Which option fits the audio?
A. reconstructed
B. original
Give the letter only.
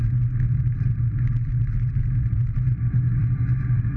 B